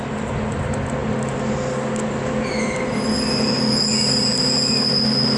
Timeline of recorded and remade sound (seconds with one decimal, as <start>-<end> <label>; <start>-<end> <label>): 0.0-5.4 recorded